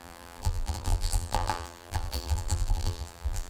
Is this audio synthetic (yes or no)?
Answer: yes